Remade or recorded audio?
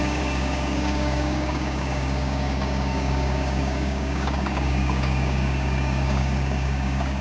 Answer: remade